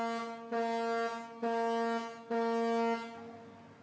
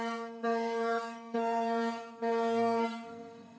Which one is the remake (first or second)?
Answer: second